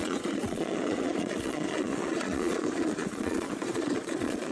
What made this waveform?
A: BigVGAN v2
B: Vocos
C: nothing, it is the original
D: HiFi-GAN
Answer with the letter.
B